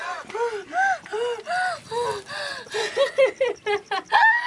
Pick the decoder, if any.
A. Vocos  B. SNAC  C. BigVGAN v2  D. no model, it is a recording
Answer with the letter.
D